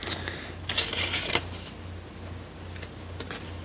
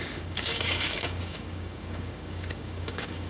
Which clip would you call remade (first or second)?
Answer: second